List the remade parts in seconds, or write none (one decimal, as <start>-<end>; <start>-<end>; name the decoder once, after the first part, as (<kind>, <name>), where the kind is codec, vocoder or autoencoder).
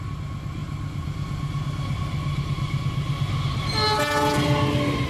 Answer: none